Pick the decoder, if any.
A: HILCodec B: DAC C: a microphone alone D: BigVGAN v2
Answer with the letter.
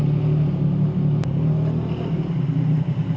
C